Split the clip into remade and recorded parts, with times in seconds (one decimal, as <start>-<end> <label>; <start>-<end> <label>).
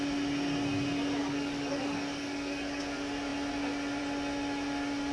0.0-1.2 recorded; 1.2-2.8 remade; 2.8-5.1 recorded